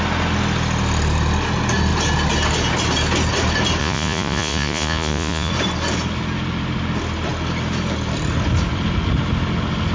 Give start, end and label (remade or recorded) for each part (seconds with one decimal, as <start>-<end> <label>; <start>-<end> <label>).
0.0-3.8 recorded; 3.8-5.5 remade; 5.5-9.9 recorded

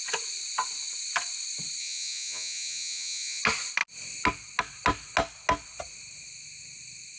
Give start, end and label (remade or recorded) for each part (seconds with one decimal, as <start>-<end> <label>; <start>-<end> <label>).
0.0-1.8 recorded; 1.8-3.4 remade; 3.4-7.2 recorded